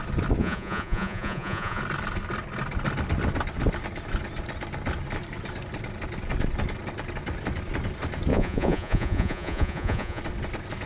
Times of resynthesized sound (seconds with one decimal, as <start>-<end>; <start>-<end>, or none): 0.4-1.8; 8.3-10.2